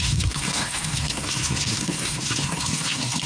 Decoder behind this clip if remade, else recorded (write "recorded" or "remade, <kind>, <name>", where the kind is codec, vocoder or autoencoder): remade, codec, SNAC